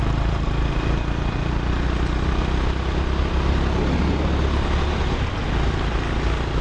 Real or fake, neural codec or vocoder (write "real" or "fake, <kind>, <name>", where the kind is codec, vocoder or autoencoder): real